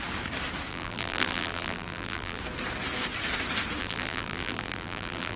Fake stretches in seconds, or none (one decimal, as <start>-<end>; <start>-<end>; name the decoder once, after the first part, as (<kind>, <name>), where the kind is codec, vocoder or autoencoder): 0.7-2.4 (vocoder, BigVGAN v2); 3.8-5.4